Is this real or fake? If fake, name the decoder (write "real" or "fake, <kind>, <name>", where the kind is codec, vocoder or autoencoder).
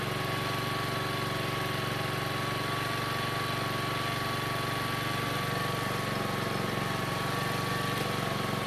real